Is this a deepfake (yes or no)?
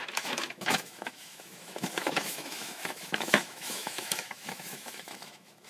yes